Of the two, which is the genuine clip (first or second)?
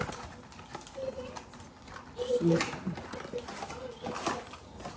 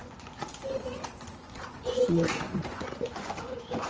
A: first